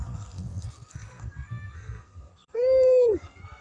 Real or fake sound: fake